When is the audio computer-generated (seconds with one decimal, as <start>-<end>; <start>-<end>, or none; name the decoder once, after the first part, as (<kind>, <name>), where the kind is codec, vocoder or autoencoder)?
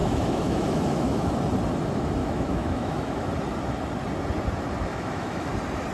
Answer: 0.0-1.3 (autoencoder, DAC-VAE); 2.2-3.3; 4.9-5.5